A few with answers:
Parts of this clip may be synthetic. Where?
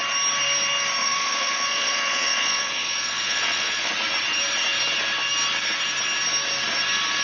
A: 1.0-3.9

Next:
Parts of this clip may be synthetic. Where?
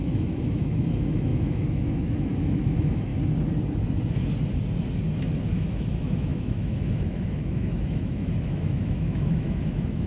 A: 0.0-3.1; 5.4-10.1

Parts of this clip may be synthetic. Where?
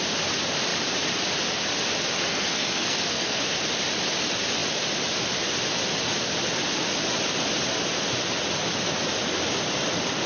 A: 2.3-3.4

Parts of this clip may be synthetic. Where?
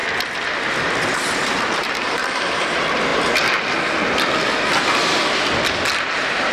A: 1.1-3.1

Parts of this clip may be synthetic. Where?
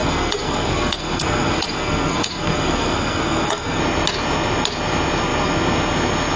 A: 0.0-3.8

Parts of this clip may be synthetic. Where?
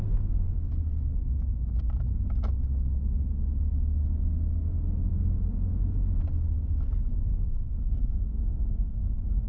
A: 7.3-9.5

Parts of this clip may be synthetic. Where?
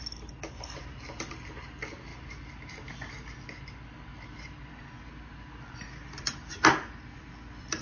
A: none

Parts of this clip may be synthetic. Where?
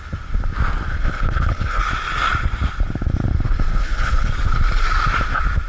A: 0.9-1.8; 3.7-4.3